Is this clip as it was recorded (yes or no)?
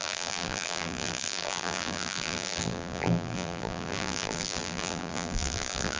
no